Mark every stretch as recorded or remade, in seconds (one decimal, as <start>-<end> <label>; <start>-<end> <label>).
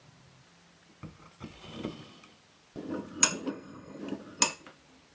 0.0-3.5 recorded; 3.5-4.0 remade; 4.0-5.1 recorded